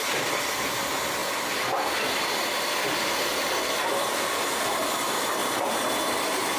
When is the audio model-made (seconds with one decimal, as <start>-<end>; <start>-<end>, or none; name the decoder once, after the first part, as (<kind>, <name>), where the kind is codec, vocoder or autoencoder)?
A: 5.4-6.6 (vocoder, BigVGAN v2)